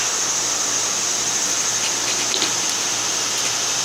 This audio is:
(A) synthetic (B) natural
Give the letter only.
B